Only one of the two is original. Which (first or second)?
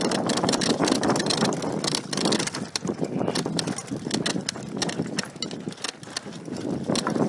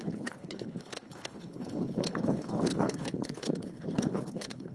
first